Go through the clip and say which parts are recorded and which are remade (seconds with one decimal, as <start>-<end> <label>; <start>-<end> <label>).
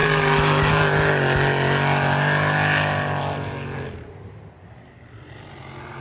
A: 0.0-6.0 recorded